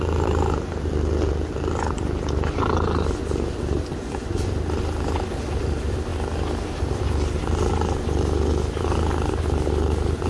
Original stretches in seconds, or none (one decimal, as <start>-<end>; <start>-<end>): 0.0-10.3